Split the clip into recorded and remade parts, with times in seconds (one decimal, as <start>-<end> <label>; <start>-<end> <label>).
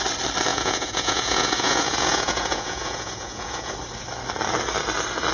0.0-0.5 recorded; 0.5-3.7 remade; 3.7-5.3 recorded